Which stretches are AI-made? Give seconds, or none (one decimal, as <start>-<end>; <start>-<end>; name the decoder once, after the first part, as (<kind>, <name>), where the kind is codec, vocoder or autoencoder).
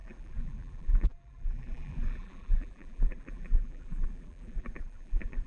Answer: 0.0-5.5 (vocoder, BigVGAN v2)